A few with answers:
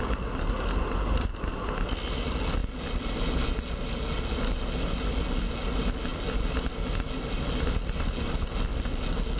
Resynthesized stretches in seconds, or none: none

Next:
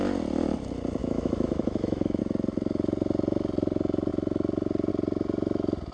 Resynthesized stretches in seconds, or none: 1.0-2.2

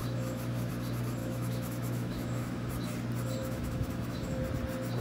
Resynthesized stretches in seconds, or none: 0.0-0.7; 1.2-2.7; 3.4-4.4

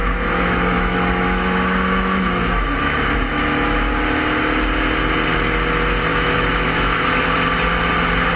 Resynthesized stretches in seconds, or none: 0.0-3.9; 6.1-7.3

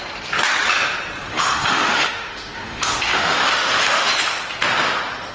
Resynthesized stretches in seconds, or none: 1.3-4.1

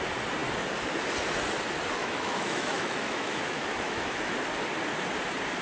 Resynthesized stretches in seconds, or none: 2.0-4.3

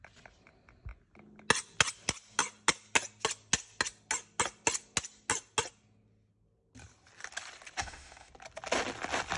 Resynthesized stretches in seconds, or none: 7.8-8.3